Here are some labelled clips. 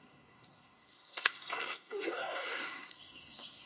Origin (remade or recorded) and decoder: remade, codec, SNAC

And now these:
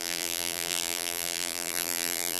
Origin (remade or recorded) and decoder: remade, vocoder, BigVGAN v2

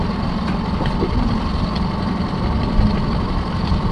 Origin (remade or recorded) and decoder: recorded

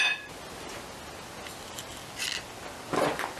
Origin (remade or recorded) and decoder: recorded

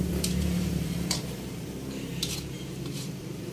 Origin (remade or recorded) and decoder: remade, vocoder, BigVGAN v2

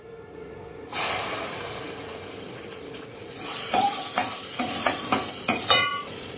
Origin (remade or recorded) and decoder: remade, vocoder, Vocos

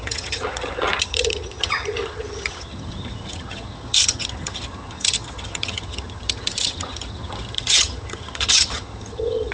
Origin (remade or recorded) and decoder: remade, vocoder, HiFi-GAN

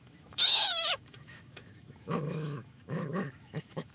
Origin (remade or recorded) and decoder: remade, autoencoder, DAC-VAE